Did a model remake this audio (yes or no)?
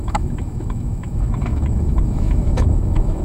yes